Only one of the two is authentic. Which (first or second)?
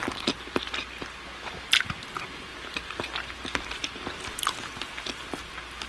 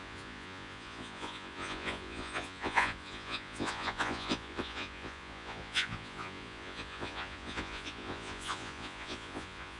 first